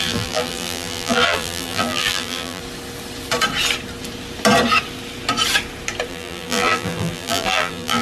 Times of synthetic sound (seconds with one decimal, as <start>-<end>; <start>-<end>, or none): 0.0-2.6; 6.1-8.0